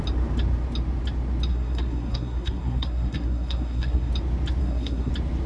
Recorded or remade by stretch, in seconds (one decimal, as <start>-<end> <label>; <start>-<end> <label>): 0.0-1.5 recorded; 1.5-4.1 remade; 4.1-4.6 recorded; 4.6-5.1 remade; 5.1-5.5 recorded